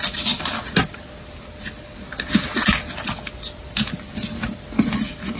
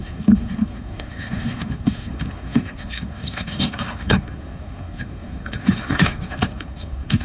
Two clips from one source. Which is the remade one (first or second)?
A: second